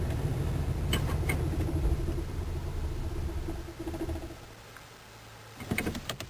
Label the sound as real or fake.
fake